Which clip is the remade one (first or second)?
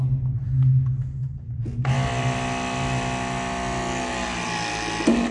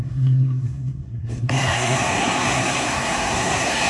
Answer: second